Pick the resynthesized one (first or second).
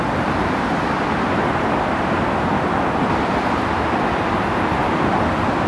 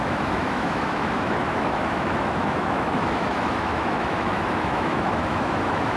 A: second